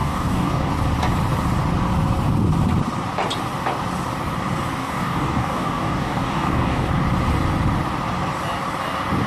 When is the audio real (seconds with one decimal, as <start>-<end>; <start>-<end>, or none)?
0.7-4.8; 6.9-9.3

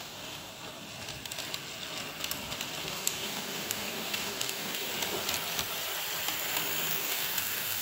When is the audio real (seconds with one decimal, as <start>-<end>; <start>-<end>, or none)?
0.5-2.8; 4.9-6.9